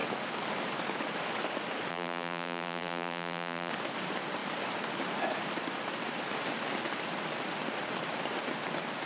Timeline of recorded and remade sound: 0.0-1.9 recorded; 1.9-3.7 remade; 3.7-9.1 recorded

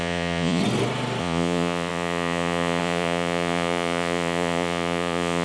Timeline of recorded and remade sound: 0.0-0.6 remade; 0.6-1.2 recorded; 1.2-5.4 remade